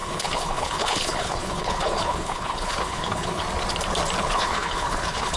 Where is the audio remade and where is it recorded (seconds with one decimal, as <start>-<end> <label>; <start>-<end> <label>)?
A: 0.0-3.4 remade; 3.4-4.2 recorded; 4.2-5.4 remade